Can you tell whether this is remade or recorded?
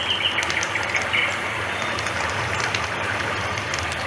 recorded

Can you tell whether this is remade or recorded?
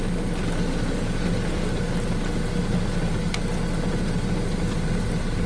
recorded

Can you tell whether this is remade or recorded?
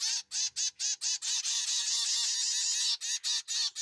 recorded